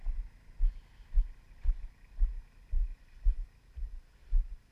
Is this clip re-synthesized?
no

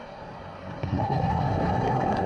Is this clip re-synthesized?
yes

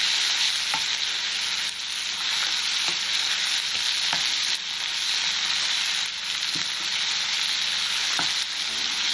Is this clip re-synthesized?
no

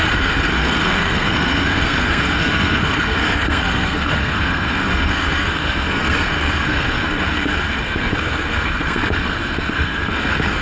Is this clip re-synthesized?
yes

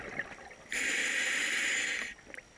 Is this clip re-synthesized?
no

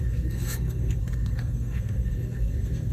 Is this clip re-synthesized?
yes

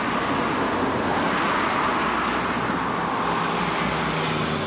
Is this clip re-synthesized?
no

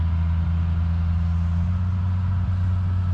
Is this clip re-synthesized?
no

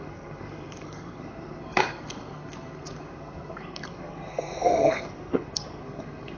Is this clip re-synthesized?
yes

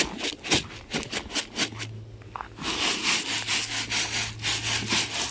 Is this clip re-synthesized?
no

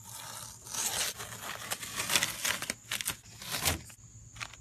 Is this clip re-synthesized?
no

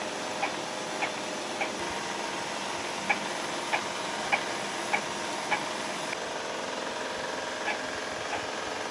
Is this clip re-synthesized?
no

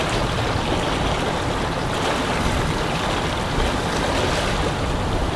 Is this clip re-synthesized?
no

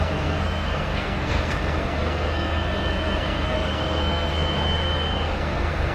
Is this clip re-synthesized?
yes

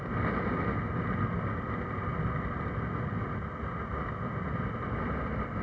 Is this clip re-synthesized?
no